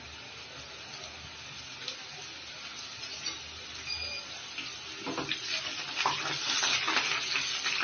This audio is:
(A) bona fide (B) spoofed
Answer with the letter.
A